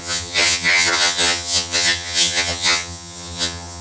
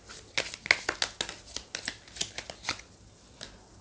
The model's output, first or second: first